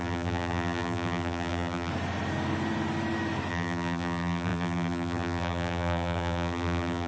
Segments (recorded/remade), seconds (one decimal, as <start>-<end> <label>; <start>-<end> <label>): 0.0-1.9 remade; 1.9-3.5 recorded; 3.5-7.1 remade